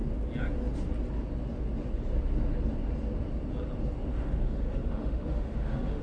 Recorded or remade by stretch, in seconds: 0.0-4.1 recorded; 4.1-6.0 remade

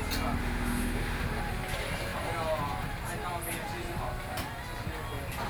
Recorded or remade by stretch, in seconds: 0.0-0.4 recorded; 0.4-1.2 remade; 1.2-5.5 recorded

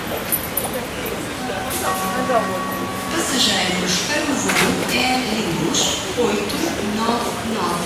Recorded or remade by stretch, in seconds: 0.0-2.9 recorded; 2.9-3.4 remade; 3.4-4.8 recorded; 4.8-5.4 remade; 5.4-7.9 recorded

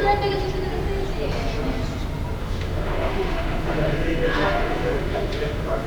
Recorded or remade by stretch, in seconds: 0.0-2.4 recorded; 2.4-5.9 remade

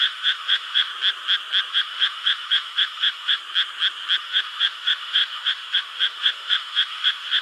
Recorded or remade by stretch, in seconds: 0.0-0.9 remade; 0.9-1.7 recorded; 1.7-3.4 remade; 3.4-4.2 recorded; 4.2-7.4 remade

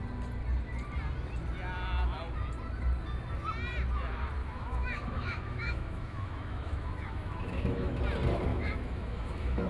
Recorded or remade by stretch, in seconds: 0.0-4.4 recorded; 4.4-8.0 remade; 8.0-8.5 recorded; 8.5-9.7 remade

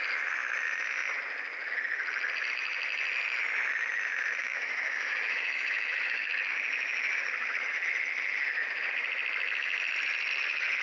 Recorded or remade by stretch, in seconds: 0.0-4.4 recorded; 4.4-6.3 remade; 6.3-10.8 recorded